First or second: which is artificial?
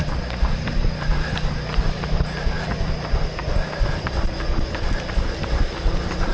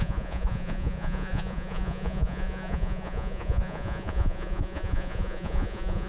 second